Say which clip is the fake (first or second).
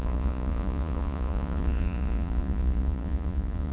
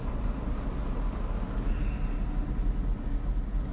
first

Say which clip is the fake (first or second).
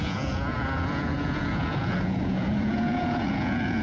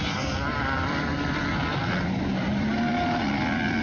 first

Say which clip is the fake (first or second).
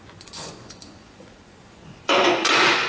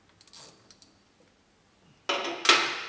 first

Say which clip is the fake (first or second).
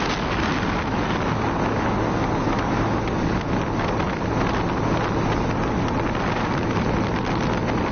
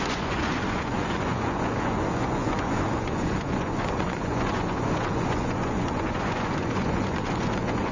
second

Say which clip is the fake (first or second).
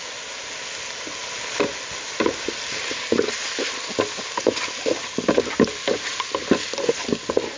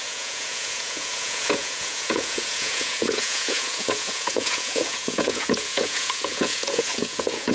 second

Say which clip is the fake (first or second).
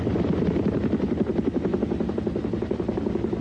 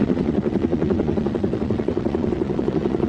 second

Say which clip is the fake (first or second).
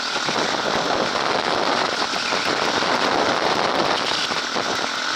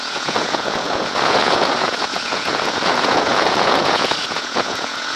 second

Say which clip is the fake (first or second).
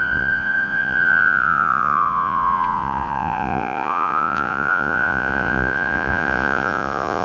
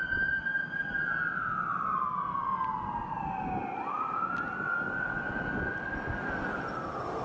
first